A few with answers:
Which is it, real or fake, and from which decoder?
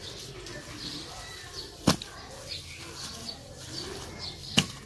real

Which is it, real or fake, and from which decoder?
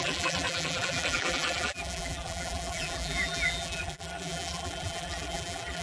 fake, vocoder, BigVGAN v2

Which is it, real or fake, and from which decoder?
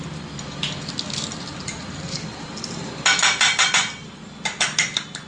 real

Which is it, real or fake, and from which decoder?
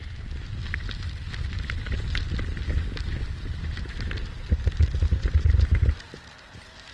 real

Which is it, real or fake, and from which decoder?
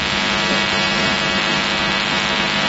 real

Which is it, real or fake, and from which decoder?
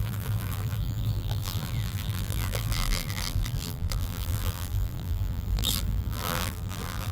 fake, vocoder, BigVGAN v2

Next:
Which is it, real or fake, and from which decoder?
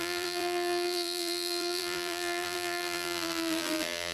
fake, vocoder, BigVGAN v2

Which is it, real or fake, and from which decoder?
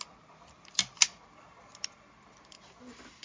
real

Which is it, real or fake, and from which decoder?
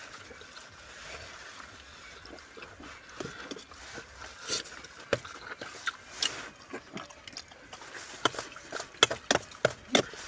real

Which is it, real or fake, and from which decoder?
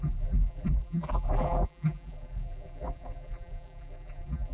fake, vocoder, BigVGAN v2